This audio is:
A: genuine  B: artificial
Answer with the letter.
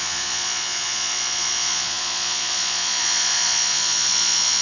B